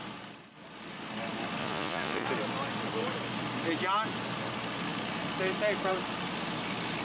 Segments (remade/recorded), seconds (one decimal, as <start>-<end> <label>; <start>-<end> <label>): 0.0-1.6 recorded; 1.6-2.3 remade; 2.3-7.0 recorded